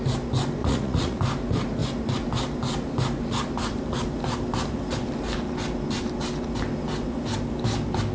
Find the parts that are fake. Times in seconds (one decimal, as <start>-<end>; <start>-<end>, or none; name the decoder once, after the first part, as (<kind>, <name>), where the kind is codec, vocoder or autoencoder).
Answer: 0.6-1.2 (vocoder, Vocos)